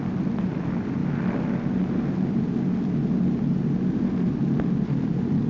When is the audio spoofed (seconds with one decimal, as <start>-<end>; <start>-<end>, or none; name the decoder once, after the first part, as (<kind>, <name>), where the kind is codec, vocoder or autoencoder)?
none